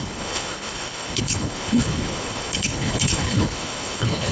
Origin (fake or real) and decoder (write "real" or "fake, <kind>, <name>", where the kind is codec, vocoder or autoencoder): fake, codec, HILCodec